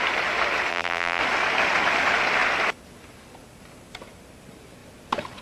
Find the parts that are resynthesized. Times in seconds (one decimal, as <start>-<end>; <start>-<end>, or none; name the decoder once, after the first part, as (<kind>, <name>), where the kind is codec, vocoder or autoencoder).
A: 0.7-1.2 (vocoder, BigVGAN v2)